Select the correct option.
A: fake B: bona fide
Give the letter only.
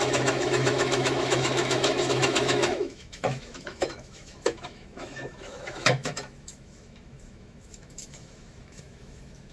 A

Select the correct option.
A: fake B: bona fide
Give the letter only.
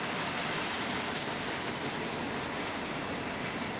B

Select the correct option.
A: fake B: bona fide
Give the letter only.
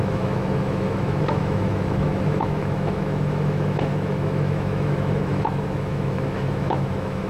A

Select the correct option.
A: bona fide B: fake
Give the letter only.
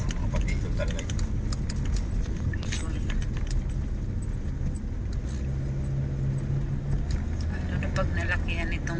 A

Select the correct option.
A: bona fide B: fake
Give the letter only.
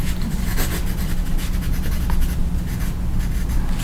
A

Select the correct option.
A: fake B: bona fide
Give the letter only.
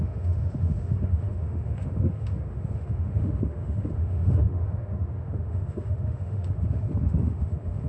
A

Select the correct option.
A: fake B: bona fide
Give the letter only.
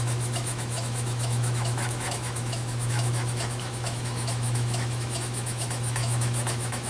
A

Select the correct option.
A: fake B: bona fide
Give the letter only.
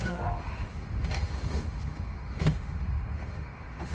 A